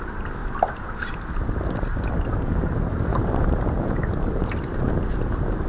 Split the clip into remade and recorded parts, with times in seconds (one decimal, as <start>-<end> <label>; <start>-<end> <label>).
0.0-0.4 remade; 0.4-0.9 recorded; 0.9-5.7 remade

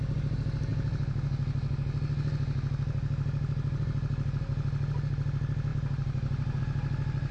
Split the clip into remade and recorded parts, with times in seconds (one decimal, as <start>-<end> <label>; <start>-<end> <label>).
0.0-5.7 recorded; 5.7-6.6 remade; 6.6-7.3 recorded

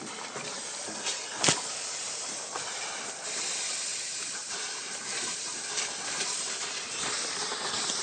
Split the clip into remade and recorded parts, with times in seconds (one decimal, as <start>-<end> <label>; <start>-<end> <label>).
0.0-3.9 recorded; 3.9-4.6 remade; 4.6-8.0 recorded

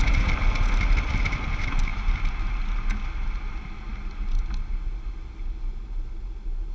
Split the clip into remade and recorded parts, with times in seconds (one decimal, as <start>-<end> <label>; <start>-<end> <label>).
0.0-1.9 recorded; 1.9-2.6 remade; 2.6-6.7 recorded

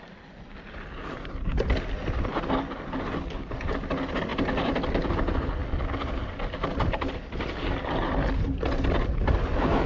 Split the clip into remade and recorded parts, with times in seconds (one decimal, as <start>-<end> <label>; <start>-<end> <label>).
0.0-4.3 recorded; 4.3-5.1 remade; 5.1-5.6 recorded; 5.6-7.9 remade; 7.9-9.9 recorded

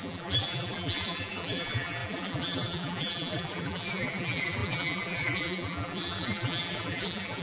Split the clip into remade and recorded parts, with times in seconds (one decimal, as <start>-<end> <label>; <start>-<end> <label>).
0.0-7.4 remade

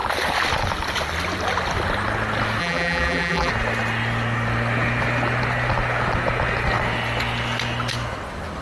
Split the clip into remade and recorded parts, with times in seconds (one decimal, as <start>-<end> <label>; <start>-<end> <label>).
0.0-2.6 recorded; 2.6-3.5 remade; 3.5-8.6 recorded